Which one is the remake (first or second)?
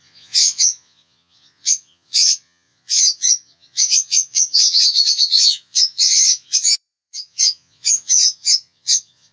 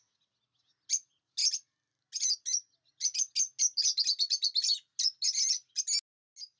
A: first